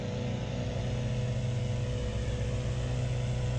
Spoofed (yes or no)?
no